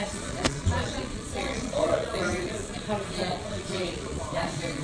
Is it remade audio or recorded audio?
remade